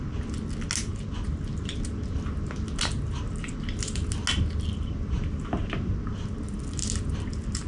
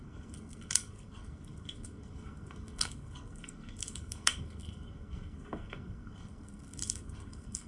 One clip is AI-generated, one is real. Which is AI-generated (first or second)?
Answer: second